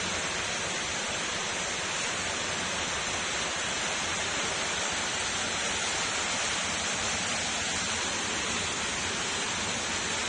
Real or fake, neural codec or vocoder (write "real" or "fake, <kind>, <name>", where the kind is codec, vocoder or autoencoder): real